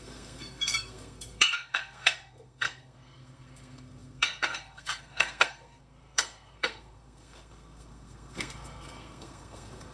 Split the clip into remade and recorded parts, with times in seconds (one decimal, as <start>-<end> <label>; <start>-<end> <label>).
0.0-9.9 remade